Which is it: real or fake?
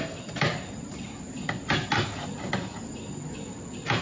real